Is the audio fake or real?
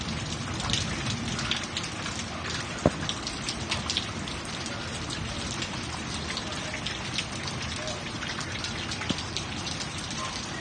fake